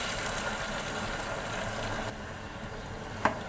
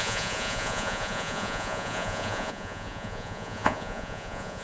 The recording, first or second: first